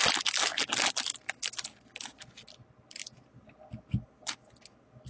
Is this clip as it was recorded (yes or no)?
yes